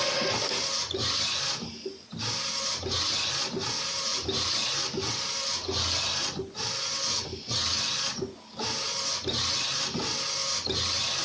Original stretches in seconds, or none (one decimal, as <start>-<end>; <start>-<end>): 0.0-4.1; 4.8-11.2